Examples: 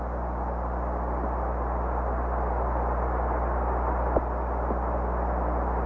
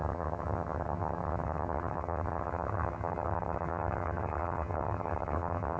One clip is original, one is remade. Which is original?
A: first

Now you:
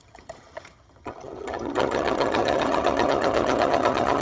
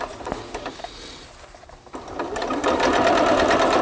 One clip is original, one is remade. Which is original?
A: second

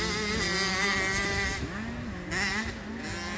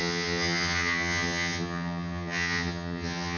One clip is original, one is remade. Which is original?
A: first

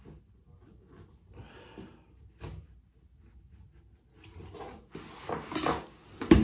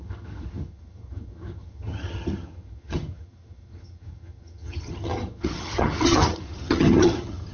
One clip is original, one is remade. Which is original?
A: first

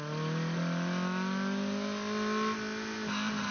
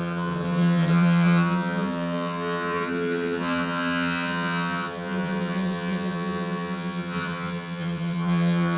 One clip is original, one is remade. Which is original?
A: first